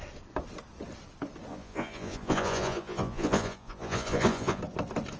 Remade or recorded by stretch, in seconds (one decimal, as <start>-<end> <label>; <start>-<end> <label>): 0.0-1.5 recorded; 1.5-4.6 remade; 4.6-5.2 recorded